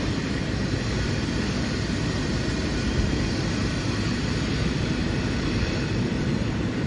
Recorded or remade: remade